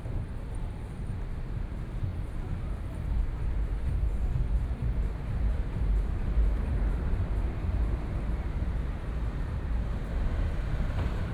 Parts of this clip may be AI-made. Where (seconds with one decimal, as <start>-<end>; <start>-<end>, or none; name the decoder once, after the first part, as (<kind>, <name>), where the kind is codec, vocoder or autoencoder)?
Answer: 0.0-11.3 (vocoder, BigVGAN v2)